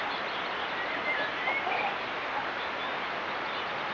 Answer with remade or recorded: recorded